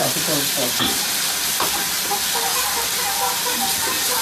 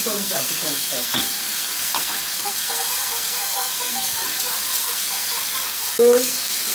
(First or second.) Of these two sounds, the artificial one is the second